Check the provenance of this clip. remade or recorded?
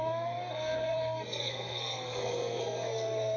remade